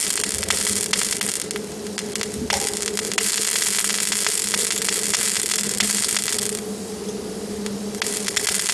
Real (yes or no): yes